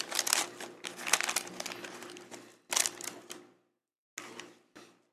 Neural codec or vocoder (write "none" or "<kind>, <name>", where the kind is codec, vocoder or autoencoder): none